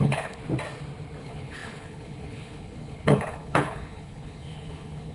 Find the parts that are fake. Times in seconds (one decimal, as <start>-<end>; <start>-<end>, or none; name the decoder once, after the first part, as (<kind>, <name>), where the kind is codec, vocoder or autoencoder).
0.0-0.4 (codec, HILCodec); 1.2-5.1